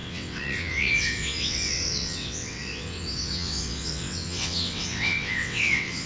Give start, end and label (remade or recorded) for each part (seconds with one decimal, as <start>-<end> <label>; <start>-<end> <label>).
0.0-6.1 remade